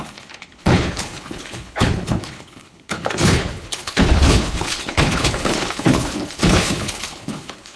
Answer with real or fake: fake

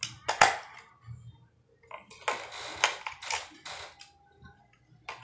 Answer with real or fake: real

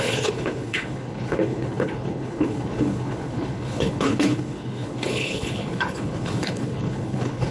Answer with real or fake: fake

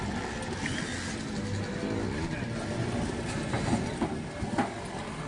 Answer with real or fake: real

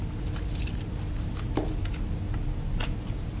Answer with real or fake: real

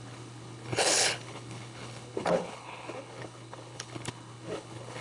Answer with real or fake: fake